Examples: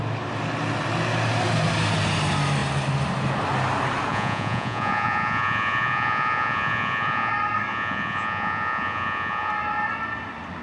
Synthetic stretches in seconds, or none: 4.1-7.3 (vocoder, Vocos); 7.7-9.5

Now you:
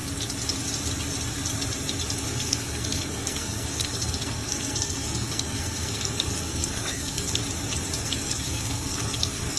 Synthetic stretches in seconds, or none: 2.3-7.4 (codec, SNAC); 8.0-9.6

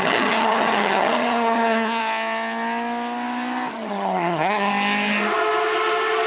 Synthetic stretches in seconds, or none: 0.0-2.0 (vocoder, HiFi-GAN); 3.7-4.7